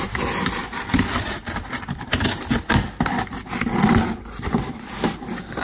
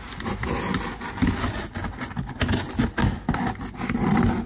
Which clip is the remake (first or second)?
first